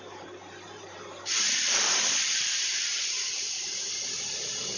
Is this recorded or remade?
remade